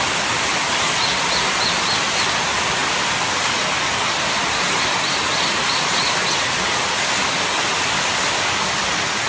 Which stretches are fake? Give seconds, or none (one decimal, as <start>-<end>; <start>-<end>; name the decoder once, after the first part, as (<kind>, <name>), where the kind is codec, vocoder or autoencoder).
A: none